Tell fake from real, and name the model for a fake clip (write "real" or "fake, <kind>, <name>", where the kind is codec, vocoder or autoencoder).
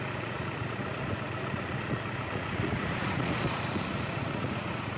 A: fake, vocoder, Vocos